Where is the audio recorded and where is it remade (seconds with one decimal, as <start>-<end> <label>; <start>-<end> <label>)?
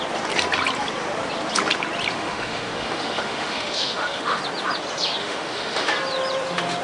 0.0-2.1 recorded; 2.1-4.4 remade; 4.4-5.2 recorded; 5.2-5.9 remade; 5.9-6.8 recorded